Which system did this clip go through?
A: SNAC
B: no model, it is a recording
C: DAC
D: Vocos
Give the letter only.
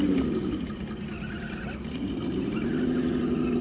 B